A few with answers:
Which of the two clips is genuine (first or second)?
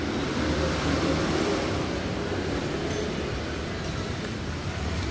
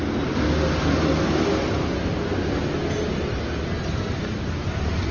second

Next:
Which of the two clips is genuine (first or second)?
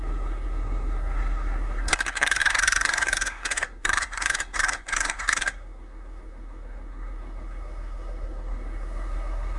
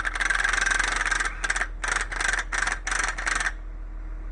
second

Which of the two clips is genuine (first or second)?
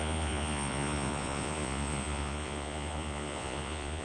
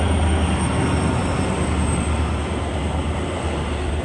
second